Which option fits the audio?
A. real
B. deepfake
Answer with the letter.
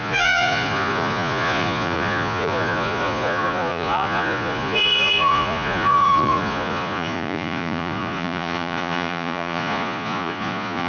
B